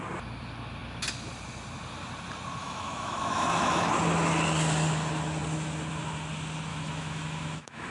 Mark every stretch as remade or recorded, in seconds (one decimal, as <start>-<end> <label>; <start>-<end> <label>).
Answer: 0.0-2.6 recorded; 2.6-3.9 remade; 3.9-6.7 recorded; 6.7-7.9 remade